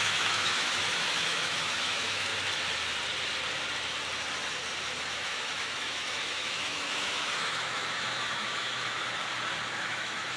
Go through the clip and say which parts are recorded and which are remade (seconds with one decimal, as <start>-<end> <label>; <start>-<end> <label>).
0.0-2.3 remade; 2.3-5.0 recorded; 5.0-9.0 remade; 9.0-9.8 recorded; 9.8-10.4 remade